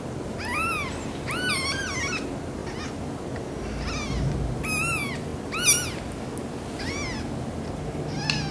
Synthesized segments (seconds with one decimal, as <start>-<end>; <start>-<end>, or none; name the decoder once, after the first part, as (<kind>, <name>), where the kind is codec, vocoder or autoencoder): none